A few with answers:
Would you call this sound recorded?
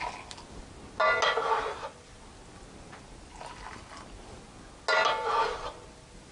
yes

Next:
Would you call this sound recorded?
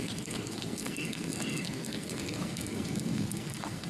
no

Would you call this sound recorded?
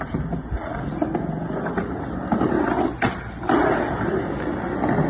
yes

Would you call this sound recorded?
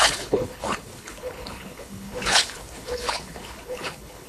no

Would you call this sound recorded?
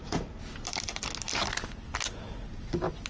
yes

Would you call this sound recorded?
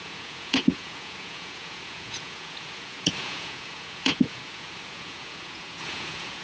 no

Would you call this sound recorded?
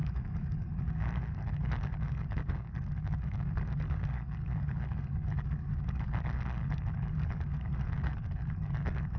no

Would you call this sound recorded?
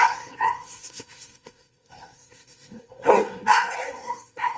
no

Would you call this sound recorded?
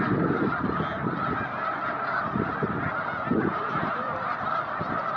yes